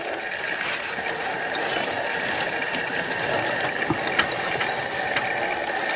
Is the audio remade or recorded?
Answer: recorded